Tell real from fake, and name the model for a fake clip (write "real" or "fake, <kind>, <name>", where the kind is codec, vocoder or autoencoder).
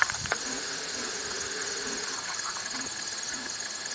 fake, vocoder, Vocos